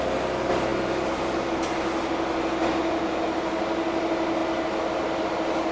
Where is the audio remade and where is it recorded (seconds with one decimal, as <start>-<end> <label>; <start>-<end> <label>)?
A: 0.0-5.7 recorded